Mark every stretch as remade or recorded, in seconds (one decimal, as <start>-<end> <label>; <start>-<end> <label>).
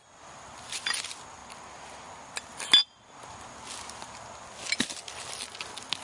0.0-6.0 recorded